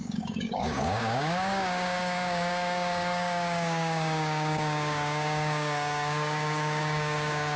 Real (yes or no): no